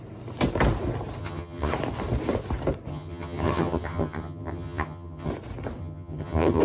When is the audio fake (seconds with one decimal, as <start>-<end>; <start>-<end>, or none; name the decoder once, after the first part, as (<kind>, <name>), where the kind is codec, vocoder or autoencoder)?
1.2-1.7 (vocoder, HiFi-GAN); 2.9-5.3; 5.8-6.6